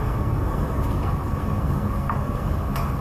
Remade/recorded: remade